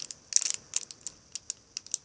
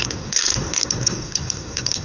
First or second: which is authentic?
first